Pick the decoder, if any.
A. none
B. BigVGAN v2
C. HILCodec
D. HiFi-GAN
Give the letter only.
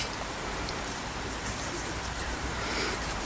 B